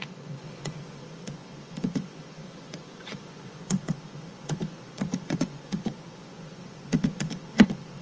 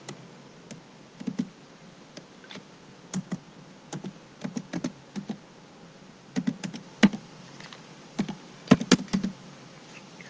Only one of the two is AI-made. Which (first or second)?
first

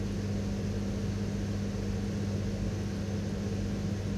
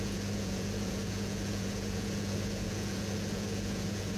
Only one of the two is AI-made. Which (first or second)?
second